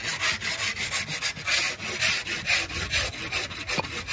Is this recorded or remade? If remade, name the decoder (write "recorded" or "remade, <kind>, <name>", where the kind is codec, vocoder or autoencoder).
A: recorded